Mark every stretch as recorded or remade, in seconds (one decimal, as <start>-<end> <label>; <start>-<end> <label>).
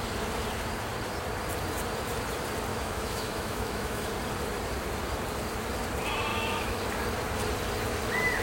0.0-2.7 recorded; 2.7-4.1 remade; 4.1-6.3 recorded; 6.3-6.8 remade; 6.8-8.4 recorded